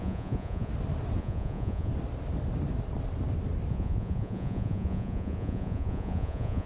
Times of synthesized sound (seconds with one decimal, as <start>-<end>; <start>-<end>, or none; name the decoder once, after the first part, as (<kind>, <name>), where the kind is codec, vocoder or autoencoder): 0.0-0.7 (vocoder, Vocos); 1.2-1.9; 3.7-6.7